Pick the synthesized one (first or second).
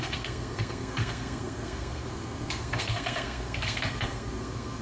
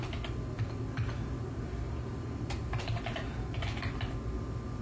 first